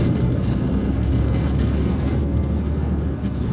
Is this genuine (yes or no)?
no